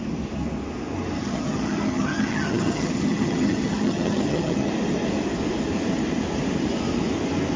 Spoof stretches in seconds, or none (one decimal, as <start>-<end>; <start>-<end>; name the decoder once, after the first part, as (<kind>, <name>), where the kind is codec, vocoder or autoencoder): 1.2-4.7 (vocoder, HiFi-GAN)